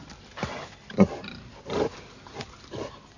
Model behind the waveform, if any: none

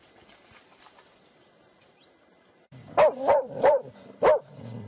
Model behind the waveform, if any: vocoder, BigVGAN v2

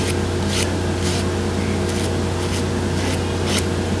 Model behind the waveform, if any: none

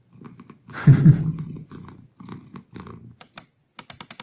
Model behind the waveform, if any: none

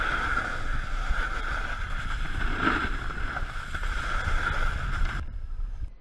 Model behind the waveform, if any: none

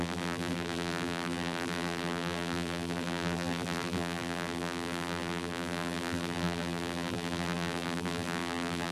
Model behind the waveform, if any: vocoder, BigVGAN v2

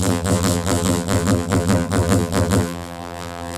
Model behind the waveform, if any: vocoder, BigVGAN v2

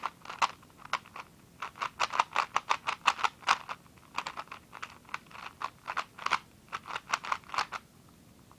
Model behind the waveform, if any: none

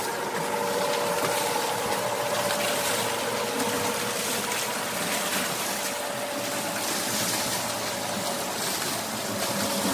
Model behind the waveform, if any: none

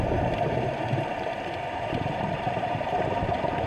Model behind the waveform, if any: vocoder, BigVGAN v2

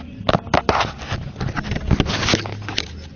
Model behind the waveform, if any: none